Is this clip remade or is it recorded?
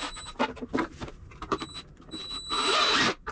remade